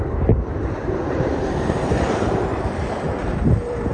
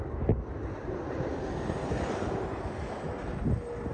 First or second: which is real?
second